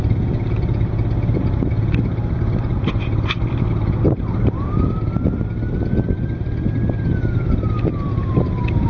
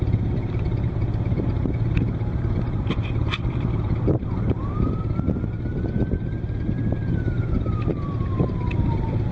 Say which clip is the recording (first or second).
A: first